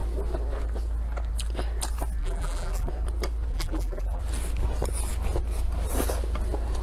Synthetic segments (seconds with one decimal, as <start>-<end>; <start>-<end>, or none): 2.2-2.9; 3.5-4.2